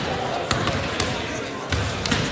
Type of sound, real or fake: real